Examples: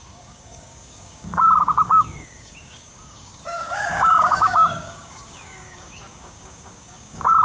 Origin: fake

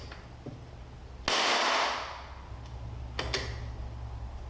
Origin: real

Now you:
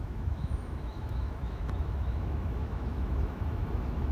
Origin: fake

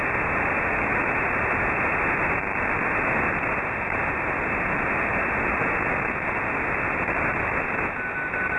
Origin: real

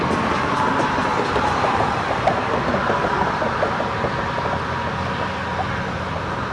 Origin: real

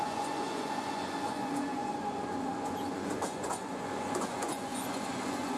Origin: fake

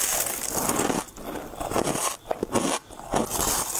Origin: real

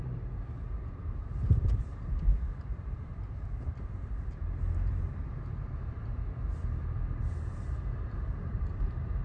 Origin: fake